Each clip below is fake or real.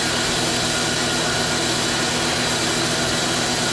real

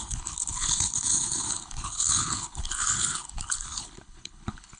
fake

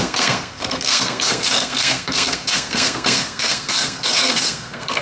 fake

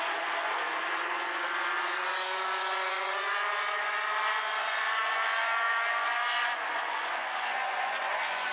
fake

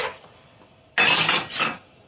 real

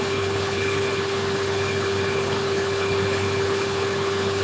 fake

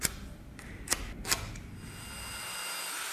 real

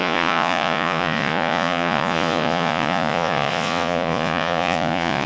fake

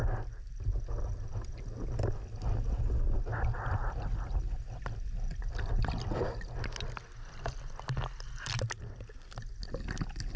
real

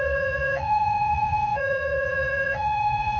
fake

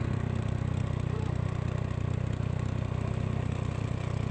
real